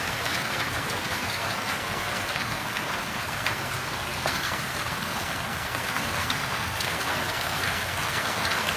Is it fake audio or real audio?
fake